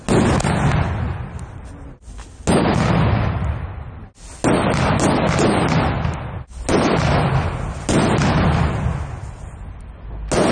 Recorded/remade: recorded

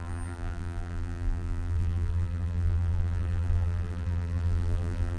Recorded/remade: remade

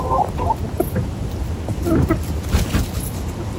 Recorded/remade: recorded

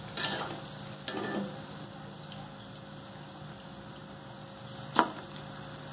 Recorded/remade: recorded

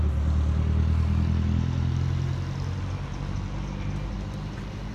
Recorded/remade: recorded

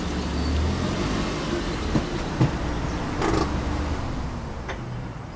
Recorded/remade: recorded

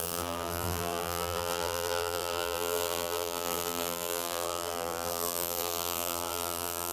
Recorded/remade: remade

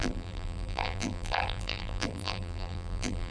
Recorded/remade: remade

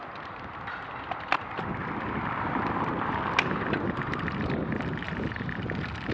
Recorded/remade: recorded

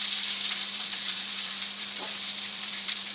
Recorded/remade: remade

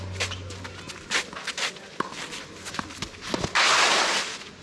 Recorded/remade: recorded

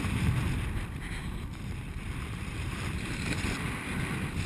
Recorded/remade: remade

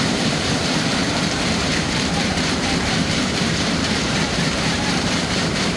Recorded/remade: remade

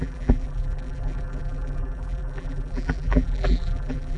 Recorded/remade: remade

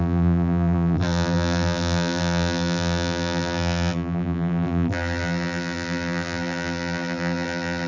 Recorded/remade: remade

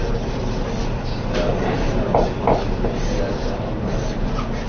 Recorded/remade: recorded